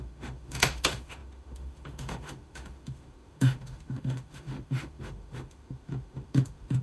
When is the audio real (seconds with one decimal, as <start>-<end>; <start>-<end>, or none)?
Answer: none